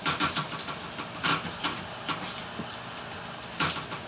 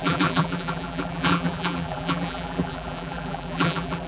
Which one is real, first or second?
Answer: first